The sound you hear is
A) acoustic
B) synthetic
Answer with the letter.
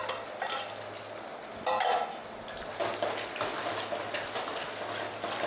A